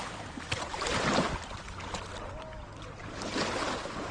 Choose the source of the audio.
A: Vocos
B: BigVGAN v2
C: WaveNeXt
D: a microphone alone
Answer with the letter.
D